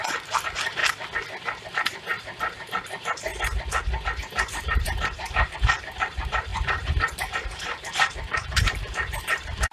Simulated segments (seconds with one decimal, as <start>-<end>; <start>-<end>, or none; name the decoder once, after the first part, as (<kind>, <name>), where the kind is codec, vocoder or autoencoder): 0.0-0.8 (vocoder, BigVGAN v2); 1.7-3.3; 4.2-9.7